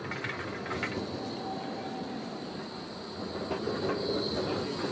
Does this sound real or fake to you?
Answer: real